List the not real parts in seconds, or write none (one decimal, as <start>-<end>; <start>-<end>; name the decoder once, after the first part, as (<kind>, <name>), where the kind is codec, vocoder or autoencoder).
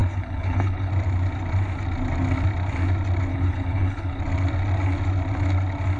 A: 0.0-0.9 (codec, HILCodec); 3.3-4.2